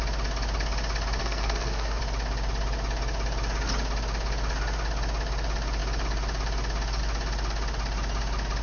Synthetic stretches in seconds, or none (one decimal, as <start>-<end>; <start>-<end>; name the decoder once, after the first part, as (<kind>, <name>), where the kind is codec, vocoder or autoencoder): 1.2-2.0 (codec, SNAC)